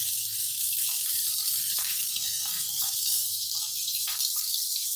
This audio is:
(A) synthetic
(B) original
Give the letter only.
A